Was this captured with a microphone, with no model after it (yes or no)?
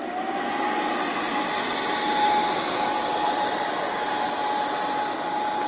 yes